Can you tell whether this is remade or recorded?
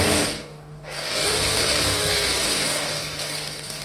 remade